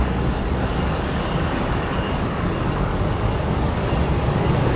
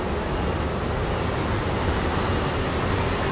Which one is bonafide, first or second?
second